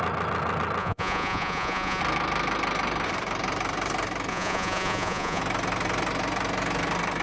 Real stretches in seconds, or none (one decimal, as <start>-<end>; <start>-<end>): 0.0-0.8; 2.0-4.3; 5.4-7.2